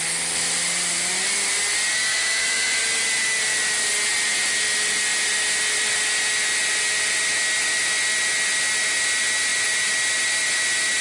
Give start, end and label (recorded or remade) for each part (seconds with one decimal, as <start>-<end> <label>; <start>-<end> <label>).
0.0-2.1 recorded; 2.1-2.8 remade; 2.8-11.0 recorded